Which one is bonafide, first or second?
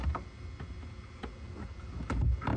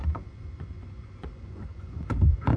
first